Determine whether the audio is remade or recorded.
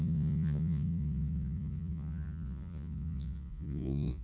remade